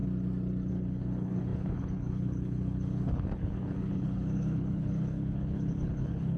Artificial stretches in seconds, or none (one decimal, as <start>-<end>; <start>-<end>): 0.7-6.4